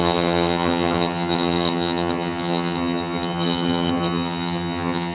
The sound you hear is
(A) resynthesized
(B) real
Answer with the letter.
A